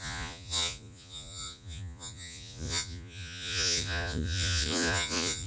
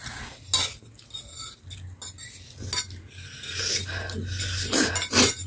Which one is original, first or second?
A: second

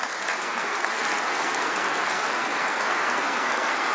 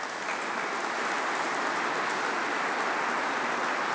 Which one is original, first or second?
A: second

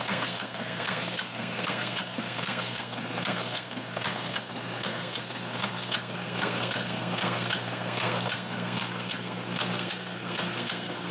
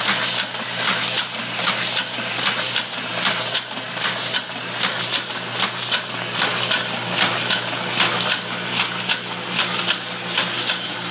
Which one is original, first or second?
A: second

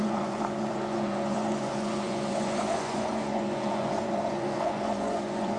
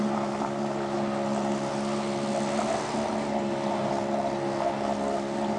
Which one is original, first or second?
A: second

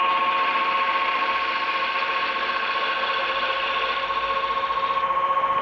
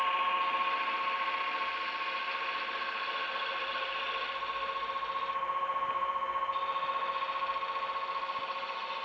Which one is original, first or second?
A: second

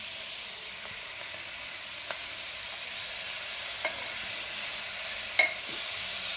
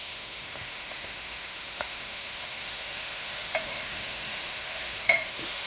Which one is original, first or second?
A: first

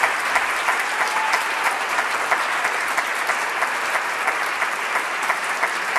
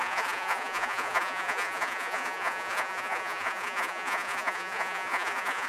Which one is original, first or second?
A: first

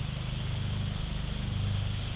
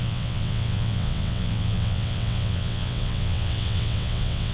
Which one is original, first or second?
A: first